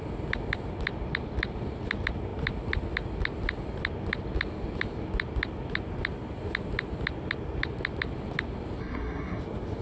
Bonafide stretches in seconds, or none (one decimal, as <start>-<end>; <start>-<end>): 0.0-8.8; 9.4-9.8